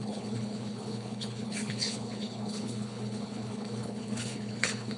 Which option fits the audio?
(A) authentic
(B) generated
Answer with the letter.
B